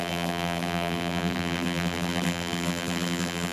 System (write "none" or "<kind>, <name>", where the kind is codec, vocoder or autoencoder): vocoder, BigVGAN v2